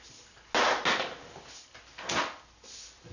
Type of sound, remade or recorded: recorded